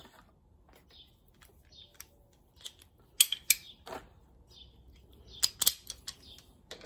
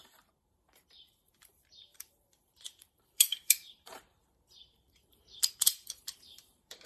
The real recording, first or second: first